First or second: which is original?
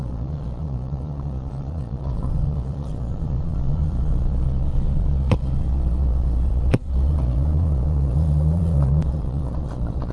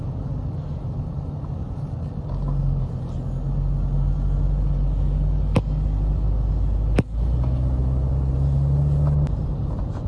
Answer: second